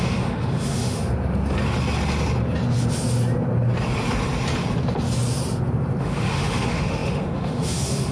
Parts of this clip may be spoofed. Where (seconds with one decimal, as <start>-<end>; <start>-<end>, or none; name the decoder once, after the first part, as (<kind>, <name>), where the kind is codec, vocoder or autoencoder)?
0.0-1.1 (autoencoder, DAC-VAE); 6.0-8.1